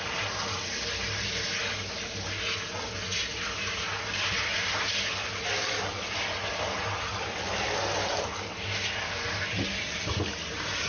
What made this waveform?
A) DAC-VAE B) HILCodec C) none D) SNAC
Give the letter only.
C